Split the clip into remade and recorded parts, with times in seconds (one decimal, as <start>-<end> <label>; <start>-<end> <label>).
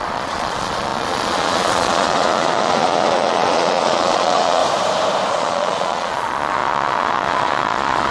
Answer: 0.0-4.6 remade; 4.6-5.3 recorded; 5.3-8.1 remade